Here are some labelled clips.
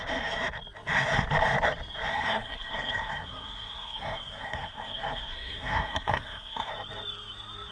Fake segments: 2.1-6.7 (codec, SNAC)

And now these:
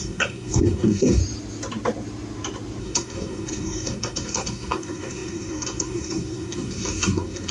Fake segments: 0.0-1.2 (codec, SNAC); 2.8-7.5

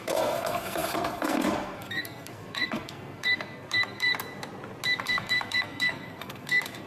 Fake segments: 0.0-4.1 (codec, SNAC); 5.0-6.9

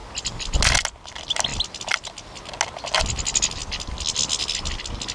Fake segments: none